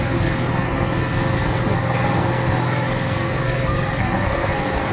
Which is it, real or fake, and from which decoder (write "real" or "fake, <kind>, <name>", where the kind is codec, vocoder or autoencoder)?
fake, codec, SNAC